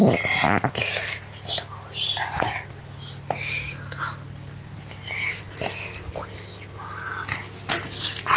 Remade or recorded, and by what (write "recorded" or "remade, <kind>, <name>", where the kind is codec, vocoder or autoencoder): recorded